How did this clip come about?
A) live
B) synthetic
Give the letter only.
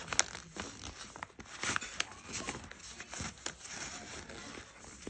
A